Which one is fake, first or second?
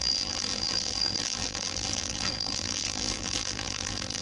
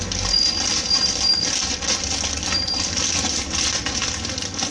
first